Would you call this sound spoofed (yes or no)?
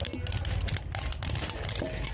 no